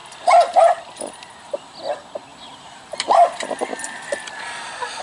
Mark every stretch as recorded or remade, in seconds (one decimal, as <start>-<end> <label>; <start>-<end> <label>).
0.0-2.3 recorded; 2.3-3.2 remade; 3.2-5.0 recorded